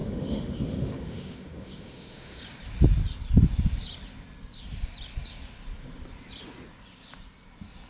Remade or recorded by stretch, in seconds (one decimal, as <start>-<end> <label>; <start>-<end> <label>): 0.0-2.4 remade; 2.4-7.9 recorded